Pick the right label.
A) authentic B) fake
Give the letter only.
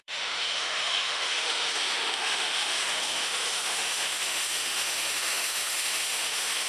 B